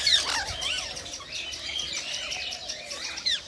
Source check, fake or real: real